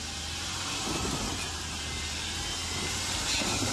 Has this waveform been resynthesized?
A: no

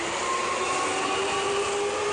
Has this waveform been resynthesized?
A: no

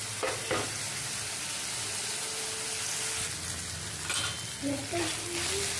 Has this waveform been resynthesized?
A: no